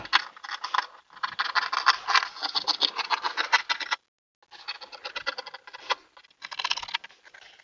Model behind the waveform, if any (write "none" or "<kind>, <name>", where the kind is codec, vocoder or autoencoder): none